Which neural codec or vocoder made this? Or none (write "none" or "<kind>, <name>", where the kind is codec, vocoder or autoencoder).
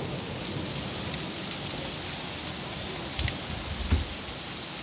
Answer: none